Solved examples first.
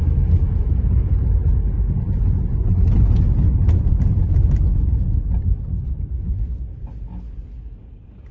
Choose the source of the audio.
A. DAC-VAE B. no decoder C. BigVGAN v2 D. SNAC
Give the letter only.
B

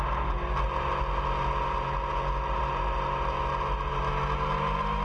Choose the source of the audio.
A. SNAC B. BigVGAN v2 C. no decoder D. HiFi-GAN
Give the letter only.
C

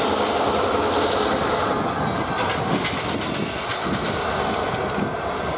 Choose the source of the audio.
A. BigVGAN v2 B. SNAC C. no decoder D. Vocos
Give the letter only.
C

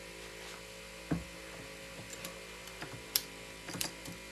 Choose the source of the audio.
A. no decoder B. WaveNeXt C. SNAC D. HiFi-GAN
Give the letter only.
A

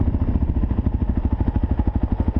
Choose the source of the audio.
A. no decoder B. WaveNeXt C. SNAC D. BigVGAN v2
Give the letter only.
A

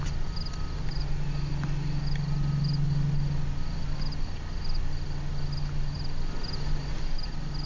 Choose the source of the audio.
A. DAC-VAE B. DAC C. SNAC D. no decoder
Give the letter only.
D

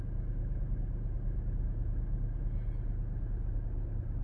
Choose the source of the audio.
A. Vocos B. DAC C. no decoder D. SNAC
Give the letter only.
C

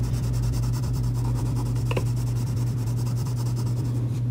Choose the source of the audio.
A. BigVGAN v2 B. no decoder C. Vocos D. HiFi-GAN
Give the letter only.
A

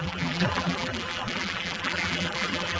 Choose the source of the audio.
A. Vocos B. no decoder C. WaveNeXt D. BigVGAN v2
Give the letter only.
D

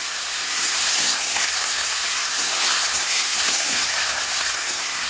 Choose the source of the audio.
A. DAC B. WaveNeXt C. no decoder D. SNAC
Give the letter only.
D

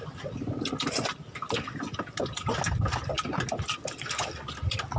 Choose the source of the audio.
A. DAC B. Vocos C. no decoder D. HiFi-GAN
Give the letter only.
C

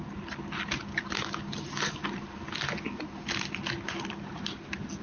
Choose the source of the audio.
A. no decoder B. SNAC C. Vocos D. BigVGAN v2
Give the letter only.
A